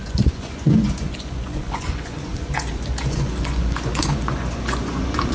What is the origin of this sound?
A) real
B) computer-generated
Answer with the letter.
B